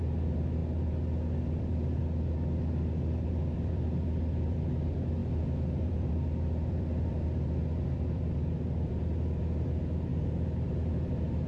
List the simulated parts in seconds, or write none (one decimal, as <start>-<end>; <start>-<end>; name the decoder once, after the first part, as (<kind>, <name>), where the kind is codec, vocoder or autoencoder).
0.0-0.6 (vocoder, BigVGAN v2); 1.6-2.0; 3.3-11.5